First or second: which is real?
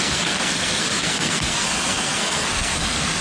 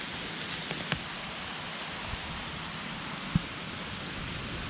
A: second